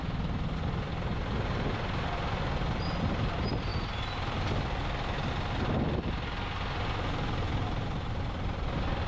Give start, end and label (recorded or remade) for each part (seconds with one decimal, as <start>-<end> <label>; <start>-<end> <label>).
0.0-9.1 recorded